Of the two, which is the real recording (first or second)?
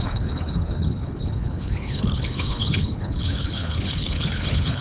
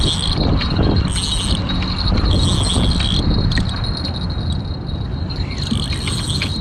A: second